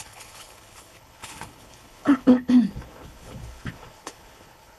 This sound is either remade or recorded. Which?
remade